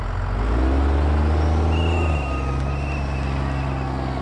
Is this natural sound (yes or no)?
yes